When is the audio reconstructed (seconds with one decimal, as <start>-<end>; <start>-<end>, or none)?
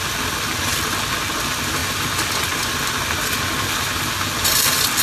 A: none